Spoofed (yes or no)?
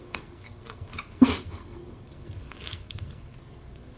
yes